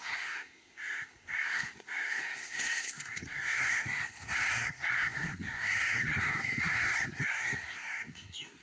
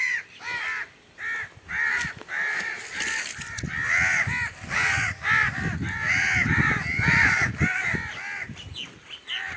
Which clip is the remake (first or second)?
first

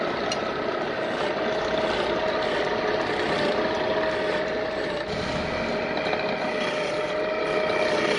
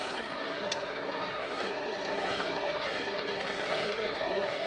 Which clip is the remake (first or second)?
second